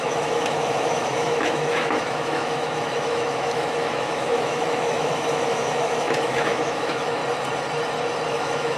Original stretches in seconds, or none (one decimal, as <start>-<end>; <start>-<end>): 7.2-8.3